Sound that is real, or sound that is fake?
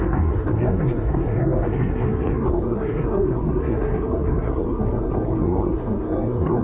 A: fake